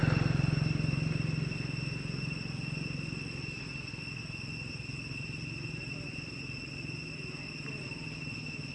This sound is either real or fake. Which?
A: real